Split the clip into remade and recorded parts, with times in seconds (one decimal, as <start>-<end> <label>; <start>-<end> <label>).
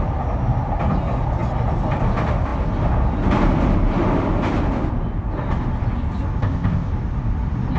0.0-6.4 recorded; 6.4-6.9 remade; 6.9-7.8 recorded